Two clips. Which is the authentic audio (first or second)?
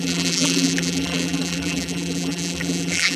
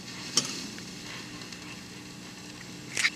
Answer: second